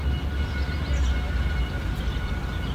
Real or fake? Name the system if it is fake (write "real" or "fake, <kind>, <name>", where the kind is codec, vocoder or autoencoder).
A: real